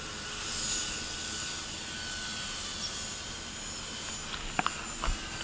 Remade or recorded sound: recorded